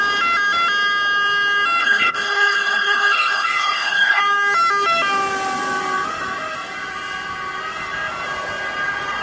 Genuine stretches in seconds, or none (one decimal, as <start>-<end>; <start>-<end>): 0.0-1.8; 4.2-9.2